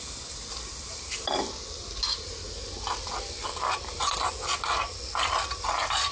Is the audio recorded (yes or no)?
yes